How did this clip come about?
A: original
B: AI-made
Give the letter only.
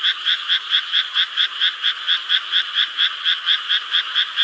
B